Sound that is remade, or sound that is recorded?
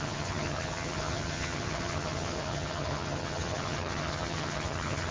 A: remade